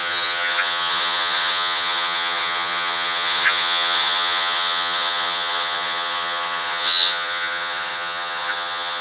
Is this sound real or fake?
fake